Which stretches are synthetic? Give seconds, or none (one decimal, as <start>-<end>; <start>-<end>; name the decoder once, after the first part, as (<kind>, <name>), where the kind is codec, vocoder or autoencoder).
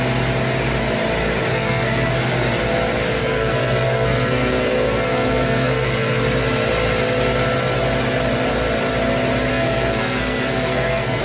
1.5-2.1 (codec, SNAC); 3.2-6.2; 9.5-11.2